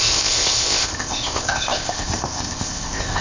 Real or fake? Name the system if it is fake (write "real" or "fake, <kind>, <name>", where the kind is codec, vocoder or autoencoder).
fake, codec, ZipCodec